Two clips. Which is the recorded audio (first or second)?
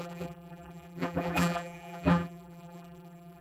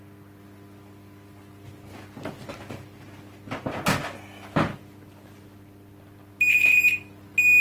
second